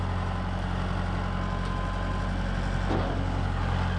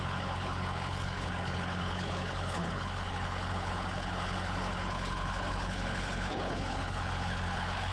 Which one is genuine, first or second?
first